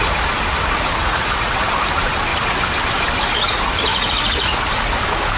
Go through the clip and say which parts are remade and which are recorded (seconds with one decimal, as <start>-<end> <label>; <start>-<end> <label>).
0.0-1.0 recorded; 1.0-1.5 remade; 1.5-3.9 recorded; 3.9-4.6 remade; 4.6-5.4 recorded